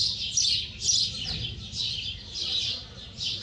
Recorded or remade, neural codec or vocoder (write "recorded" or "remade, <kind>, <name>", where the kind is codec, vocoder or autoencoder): recorded